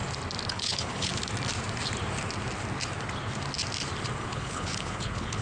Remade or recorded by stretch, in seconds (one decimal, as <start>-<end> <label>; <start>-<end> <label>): 0.0-0.5 recorded; 0.5-1.1 remade; 1.1-4.2 recorded; 4.2-5.4 remade

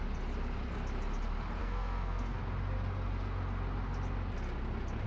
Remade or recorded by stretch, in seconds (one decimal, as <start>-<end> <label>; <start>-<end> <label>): 0.0-1.6 recorded; 1.6-2.4 remade; 2.4-5.1 recorded